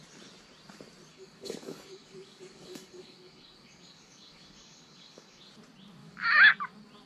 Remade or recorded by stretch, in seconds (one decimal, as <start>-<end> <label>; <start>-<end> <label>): 0.0-1.1 recorded; 1.1-5.4 remade; 5.4-6.0 recorded; 6.0-6.5 remade; 6.5-7.1 recorded